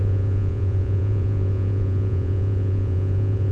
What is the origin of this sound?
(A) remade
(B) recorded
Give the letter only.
A